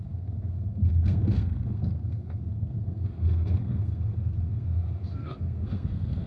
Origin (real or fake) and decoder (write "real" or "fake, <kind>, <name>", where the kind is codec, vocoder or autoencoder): fake, codec, SNAC